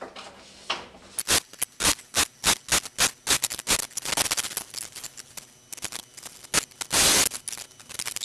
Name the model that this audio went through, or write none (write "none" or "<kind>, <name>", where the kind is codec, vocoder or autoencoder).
none